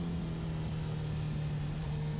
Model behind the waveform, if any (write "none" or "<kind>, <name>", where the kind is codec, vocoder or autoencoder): none